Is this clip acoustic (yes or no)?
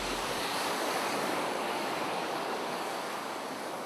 no